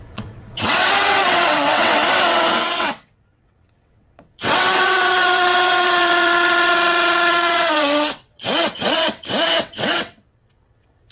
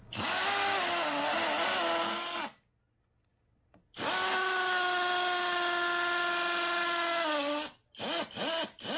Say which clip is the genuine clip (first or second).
second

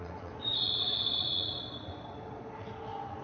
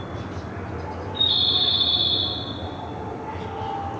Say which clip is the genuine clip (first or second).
second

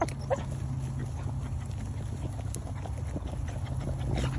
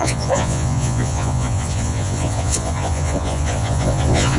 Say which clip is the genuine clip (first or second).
first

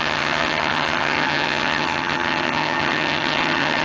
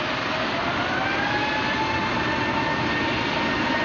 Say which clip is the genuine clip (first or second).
second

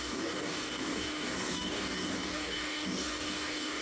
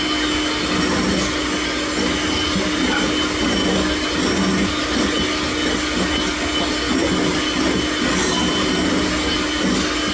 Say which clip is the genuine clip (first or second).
second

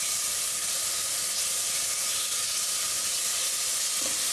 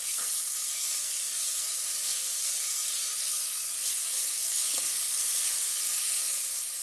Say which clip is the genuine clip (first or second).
first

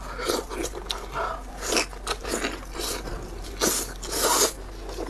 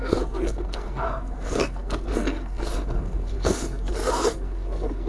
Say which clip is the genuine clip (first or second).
first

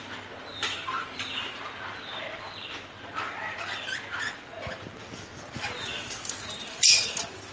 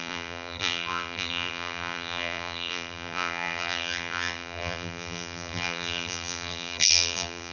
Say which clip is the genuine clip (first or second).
first